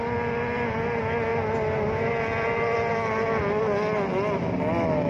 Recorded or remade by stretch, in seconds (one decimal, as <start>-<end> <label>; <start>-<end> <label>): 0.0-5.1 recorded